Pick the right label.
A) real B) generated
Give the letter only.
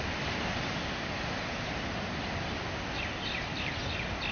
A